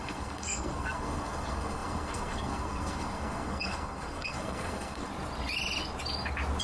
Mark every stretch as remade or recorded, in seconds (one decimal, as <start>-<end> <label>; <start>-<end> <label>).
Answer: 0.0-5.1 remade; 5.1-6.6 recorded